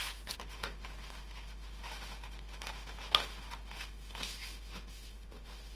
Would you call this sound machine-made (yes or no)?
yes